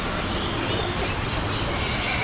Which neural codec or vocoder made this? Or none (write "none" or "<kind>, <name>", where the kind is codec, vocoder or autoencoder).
none